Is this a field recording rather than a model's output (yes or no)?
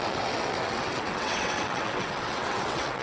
no